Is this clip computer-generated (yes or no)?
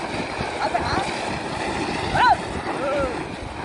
no